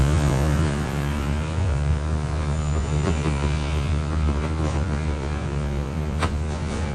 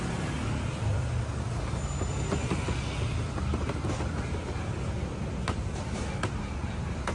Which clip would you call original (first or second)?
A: second